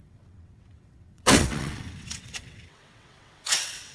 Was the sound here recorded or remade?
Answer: remade